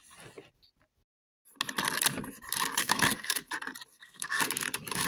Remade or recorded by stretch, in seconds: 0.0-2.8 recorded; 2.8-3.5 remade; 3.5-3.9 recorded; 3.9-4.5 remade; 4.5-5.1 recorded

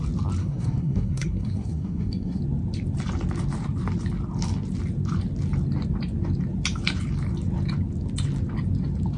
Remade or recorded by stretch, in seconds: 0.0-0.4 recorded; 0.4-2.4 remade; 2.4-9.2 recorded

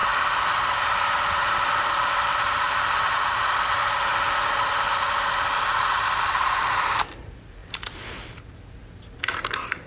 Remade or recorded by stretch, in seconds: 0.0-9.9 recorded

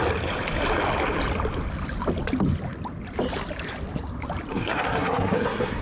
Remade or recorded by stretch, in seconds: 0.0-4.5 recorded; 4.5-5.8 remade

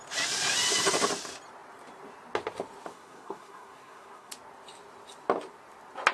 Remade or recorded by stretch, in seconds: 0.0-2.9 recorded; 2.9-4.3 remade; 4.3-6.1 recorded

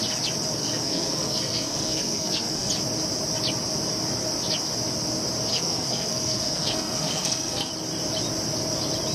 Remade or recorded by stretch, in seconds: 0.0-0.6 recorded; 0.6-2.7 remade; 2.7-5.5 recorded; 5.5-7.7 remade; 7.7-9.1 recorded